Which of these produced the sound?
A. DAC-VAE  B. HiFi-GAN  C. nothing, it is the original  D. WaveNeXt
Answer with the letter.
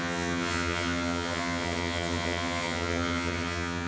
B